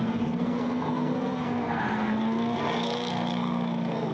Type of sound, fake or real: fake